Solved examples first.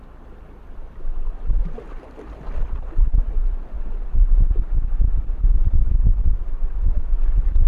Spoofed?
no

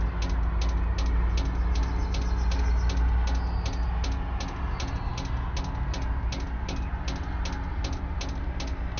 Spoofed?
no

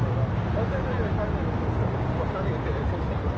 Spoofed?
no